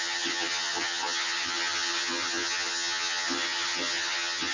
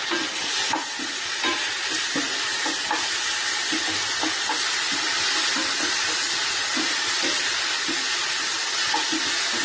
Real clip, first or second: second